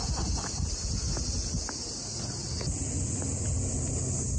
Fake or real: real